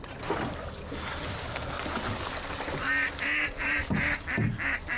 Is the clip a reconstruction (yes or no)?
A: no